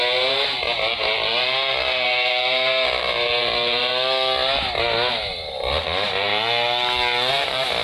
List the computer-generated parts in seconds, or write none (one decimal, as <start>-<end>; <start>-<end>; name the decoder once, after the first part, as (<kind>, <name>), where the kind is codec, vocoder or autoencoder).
0.0-3.9 (vocoder, BigVGAN v2); 5.5-6.3; 7.3-7.8